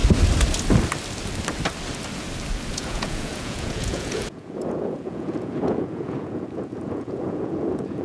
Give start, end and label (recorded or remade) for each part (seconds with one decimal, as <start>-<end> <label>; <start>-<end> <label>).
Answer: 0.0-2.7 recorded; 2.7-8.0 remade

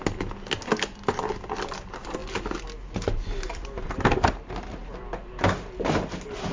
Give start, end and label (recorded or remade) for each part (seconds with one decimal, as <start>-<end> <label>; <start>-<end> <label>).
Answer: 0.0-6.5 recorded

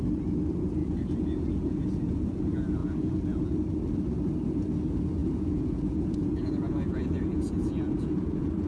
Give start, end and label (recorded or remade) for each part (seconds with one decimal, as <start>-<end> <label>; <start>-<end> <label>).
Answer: 0.0-0.8 recorded; 0.8-2.4 remade; 2.4-2.8 recorded; 2.8-3.4 remade; 3.4-5.2 recorded; 5.2-8.7 remade

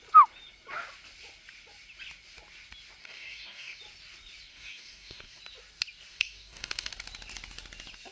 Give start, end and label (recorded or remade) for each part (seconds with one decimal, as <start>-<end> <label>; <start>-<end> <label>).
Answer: 0.0-3.0 recorded; 3.0-3.8 remade; 3.8-4.5 recorded; 4.5-5.4 remade; 5.4-6.1 recorded; 6.1-6.9 remade; 6.9-8.1 recorded

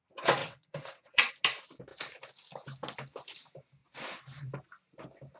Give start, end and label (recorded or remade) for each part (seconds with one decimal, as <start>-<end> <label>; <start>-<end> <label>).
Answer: 0.0-0.4 recorded; 0.4-1.3 remade; 1.3-5.4 recorded

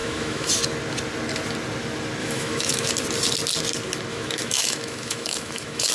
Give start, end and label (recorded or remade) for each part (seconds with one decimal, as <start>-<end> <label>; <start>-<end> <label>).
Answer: 0.0-0.5 remade; 0.5-2.2 recorded; 2.2-2.9 remade; 2.9-4.1 recorded; 4.1-5.9 remade

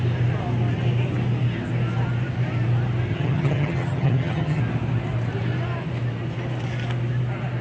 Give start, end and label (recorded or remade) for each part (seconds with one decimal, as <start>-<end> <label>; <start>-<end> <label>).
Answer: 0.0-3.1 recorded; 3.1-4.6 remade; 4.6-7.6 recorded

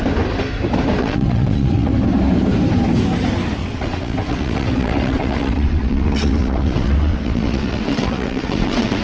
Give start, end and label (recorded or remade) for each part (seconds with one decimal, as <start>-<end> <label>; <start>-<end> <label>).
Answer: 0.0-1.0 recorded; 1.0-1.9 remade; 1.9-3.6 recorded; 3.6-9.0 remade